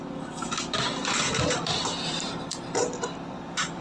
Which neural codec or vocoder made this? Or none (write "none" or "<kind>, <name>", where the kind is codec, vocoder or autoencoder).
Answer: none